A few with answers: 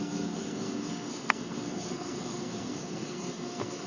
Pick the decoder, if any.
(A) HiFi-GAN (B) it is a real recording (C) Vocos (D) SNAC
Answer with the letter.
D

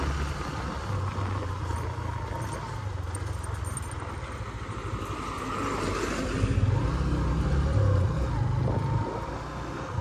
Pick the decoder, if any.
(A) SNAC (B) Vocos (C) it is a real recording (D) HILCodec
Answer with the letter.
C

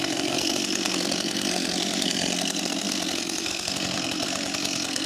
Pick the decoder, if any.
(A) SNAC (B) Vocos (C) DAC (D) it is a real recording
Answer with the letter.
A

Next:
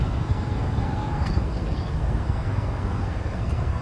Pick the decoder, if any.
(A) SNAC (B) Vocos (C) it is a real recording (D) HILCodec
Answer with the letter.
A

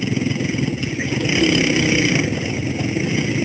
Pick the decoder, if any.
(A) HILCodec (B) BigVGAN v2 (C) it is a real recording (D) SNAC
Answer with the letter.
C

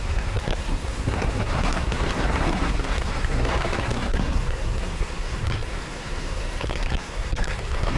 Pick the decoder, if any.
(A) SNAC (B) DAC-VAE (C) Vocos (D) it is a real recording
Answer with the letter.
A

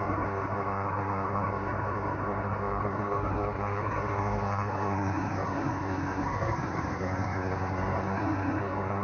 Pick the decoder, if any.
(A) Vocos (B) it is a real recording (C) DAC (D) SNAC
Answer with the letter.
D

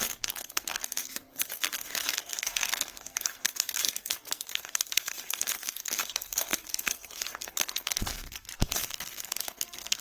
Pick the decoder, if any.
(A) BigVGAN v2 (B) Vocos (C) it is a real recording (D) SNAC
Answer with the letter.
D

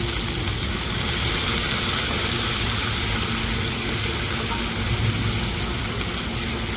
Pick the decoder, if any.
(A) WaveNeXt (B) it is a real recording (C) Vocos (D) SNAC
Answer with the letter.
B